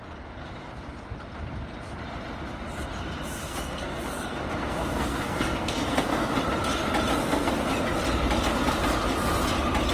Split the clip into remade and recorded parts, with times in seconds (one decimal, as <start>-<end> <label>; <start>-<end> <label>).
0.0-3.4 recorded; 3.4-6.4 remade; 6.4-7.2 recorded; 7.2-7.7 remade; 7.7-9.9 recorded